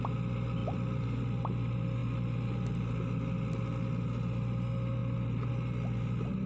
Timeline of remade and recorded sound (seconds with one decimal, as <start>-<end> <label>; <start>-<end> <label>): 0.0-0.6 recorded; 0.6-1.2 remade; 1.2-2.0 recorded; 2.0-3.6 remade; 3.6-5.0 recorded; 5.0-5.5 remade; 5.5-6.5 recorded